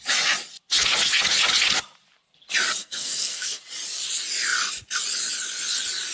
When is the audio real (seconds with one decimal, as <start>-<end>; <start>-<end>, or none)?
0.0-2.8; 3.6-6.1